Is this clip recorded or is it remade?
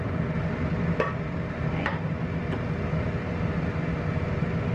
recorded